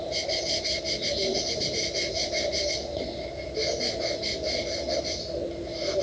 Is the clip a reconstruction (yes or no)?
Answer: no